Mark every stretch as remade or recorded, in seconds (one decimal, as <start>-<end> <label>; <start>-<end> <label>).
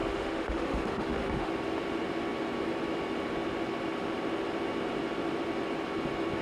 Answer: 0.0-1.5 remade; 1.5-6.4 recorded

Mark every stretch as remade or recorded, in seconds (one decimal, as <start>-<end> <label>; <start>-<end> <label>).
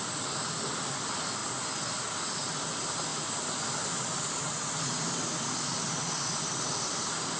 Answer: 0.0-7.4 recorded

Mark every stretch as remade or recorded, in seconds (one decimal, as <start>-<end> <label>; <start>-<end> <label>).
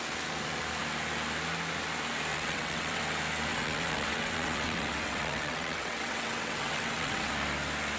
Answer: 0.0-2.3 recorded; 2.3-3.0 remade; 3.0-3.5 recorded; 3.5-7.3 remade; 7.3-8.0 recorded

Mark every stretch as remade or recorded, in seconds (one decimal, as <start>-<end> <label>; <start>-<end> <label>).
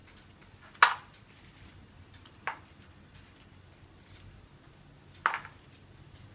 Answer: 0.0-6.3 recorded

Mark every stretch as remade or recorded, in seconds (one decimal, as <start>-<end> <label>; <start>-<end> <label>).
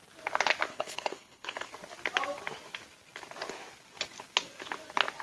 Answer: 0.0-0.7 recorded; 0.7-1.7 remade; 1.7-5.2 recorded